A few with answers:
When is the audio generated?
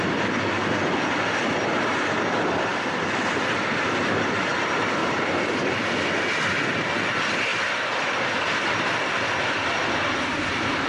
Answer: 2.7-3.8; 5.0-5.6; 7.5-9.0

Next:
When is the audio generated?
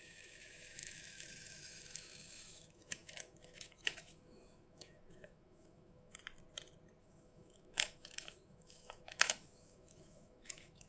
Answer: 0.0-6.2; 7.0-10.9